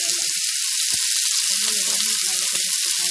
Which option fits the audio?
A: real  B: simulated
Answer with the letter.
A